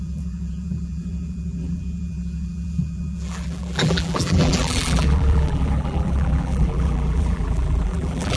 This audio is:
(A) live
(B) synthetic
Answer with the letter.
B